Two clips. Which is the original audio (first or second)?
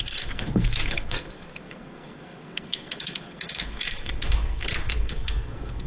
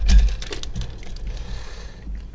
second